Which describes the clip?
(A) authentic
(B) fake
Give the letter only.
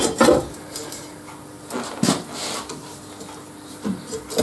A